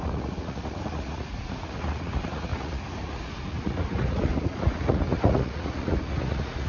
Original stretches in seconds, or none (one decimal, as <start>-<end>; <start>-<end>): none